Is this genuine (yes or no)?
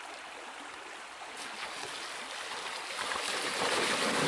yes